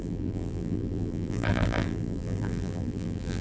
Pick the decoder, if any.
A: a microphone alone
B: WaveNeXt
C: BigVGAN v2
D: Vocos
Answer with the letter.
C